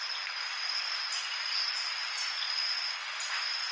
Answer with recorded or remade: recorded